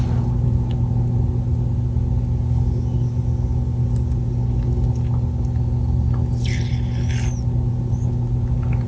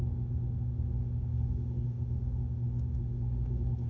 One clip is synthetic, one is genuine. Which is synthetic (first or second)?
second